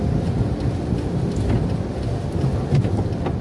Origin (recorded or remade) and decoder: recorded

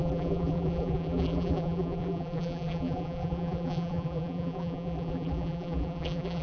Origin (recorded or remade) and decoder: remade, vocoder, BigVGAN v2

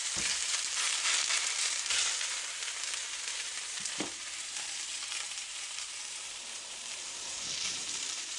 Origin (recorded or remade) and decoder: remade, vocoder, BigVGAN v2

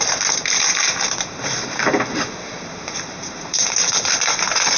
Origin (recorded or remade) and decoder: remade, vocoder, BigVGAN v2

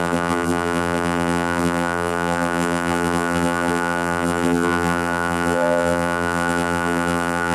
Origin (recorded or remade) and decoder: remade, vocoder, BigVGAN v2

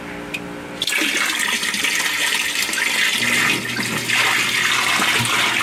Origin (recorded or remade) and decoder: recorded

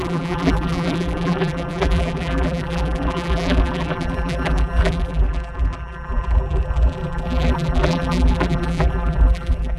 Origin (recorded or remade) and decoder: remade, vocoder, BigVGAN v2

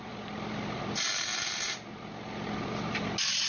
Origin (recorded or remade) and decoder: recorded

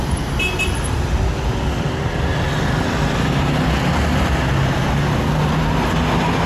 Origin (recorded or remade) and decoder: recorded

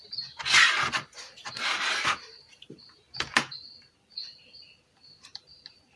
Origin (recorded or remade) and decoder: remade, vocoder, BigVGAN v2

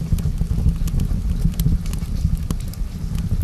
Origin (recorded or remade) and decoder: recorded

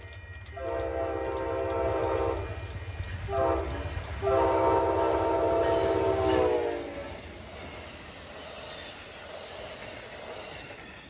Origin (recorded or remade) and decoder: recorded